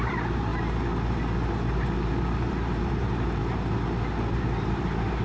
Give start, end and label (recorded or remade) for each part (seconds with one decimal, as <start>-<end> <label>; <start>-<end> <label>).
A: 0.0-0.5 remade; 0.5-2.2 recorded; 2.2-3.4 remade; 3.4-4.4 recorded; 4.4-5.2 remade